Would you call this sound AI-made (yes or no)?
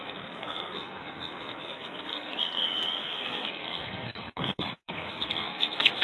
yes